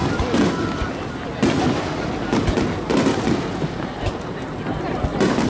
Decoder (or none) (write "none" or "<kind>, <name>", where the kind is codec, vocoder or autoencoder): none